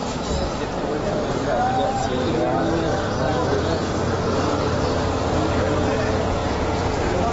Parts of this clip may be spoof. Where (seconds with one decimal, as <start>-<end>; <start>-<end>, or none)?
3.3-3.9; 6.4-7.3